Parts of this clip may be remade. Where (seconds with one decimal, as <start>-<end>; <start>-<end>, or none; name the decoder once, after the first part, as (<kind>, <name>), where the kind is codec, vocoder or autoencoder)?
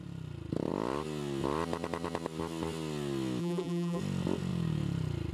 3.4-4.0 (vocoder, BigVGAN v2)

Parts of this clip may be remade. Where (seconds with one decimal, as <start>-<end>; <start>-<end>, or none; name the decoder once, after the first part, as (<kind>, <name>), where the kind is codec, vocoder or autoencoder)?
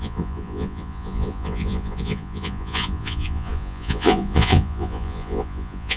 0.0-6.0 (vocoder, Vocos)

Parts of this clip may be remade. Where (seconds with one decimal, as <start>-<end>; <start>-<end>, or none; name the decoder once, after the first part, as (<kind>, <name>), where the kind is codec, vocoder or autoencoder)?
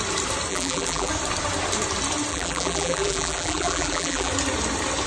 0.5-1.1 (vocoder, BigVGAN v2); 2.3-4.3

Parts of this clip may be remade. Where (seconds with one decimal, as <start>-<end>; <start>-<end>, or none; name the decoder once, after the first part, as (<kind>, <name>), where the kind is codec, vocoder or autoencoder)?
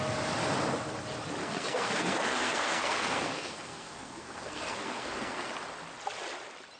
1.4-5.5 (codec, SNAC)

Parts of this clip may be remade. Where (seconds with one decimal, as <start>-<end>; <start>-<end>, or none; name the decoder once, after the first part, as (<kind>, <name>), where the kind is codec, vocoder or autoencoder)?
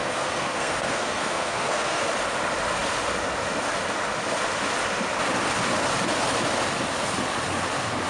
0.0-2.0 (codec, SNAC)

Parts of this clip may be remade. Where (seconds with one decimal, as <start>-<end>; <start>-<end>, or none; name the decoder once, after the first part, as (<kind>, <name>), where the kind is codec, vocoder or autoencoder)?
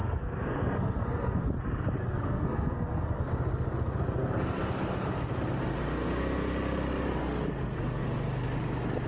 0.0-1.4 (codec, SNAC); 2.0-3.2; 7.2-7.8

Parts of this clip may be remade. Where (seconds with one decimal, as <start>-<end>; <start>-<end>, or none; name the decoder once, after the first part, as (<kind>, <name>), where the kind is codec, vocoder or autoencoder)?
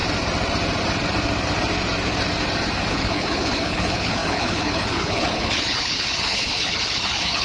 2.9-7.4 (codec, HILCodec)